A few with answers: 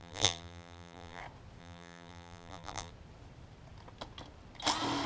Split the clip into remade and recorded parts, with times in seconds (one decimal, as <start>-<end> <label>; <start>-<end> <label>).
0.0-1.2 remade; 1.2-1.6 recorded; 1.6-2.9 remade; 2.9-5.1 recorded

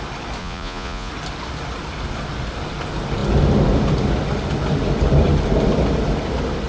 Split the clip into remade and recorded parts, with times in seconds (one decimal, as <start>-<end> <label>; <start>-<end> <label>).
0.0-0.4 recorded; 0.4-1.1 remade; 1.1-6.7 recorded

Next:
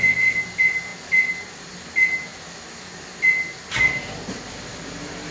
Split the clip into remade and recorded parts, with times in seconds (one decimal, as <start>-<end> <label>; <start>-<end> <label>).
0.0-5.3 recorded